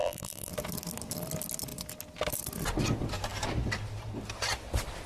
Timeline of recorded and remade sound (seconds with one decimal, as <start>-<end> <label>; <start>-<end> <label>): 0.0-0.5 remade; 0.5-5.1 recorded